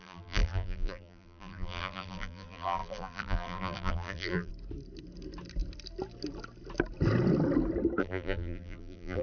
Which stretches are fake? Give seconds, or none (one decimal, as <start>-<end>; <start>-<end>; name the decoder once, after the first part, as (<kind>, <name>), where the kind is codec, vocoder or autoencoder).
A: 0.0-4.5 (vocoder, BigVGAN v2); 8.0-9.2